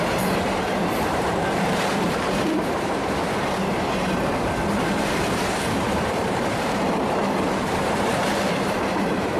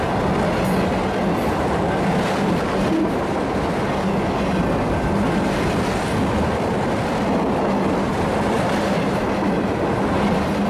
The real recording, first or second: second